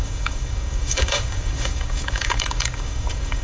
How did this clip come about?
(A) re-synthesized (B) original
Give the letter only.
A